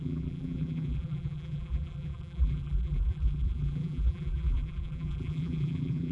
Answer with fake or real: fake